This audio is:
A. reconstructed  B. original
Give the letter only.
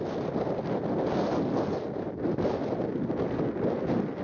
B